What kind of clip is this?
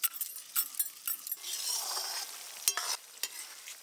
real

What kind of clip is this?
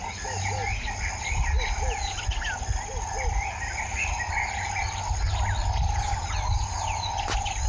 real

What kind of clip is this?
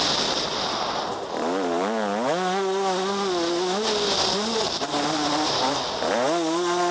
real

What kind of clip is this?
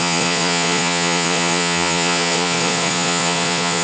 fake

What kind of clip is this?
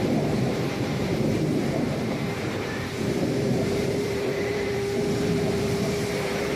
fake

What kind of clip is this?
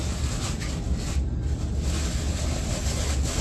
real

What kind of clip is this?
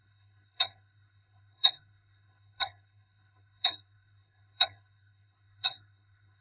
fake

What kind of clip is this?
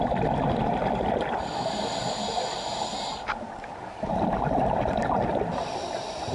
real